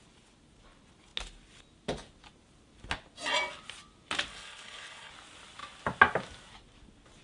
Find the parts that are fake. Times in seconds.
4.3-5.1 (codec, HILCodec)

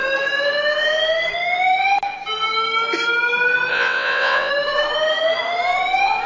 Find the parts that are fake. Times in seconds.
3.7-4.5 (vocoder, WaveNeXt)

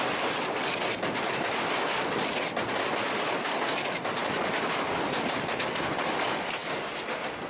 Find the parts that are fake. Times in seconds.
none

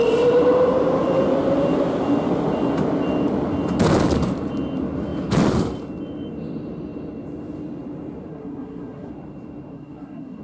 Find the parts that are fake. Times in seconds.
8.3-9.1 (codec, SNAC); 9.7-10.4

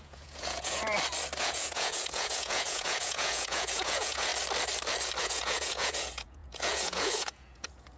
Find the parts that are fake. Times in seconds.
0.0-0.8 (vocoder, Vocos); 1.4-4.3; 5.2-8.0

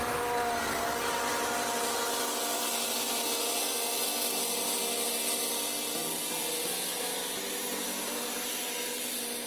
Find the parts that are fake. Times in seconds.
none